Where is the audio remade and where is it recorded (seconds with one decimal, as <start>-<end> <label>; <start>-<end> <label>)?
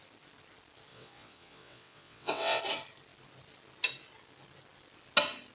0.0-0.9 recorded; 0.9-2.6 remade; 2.6-5.5 recorded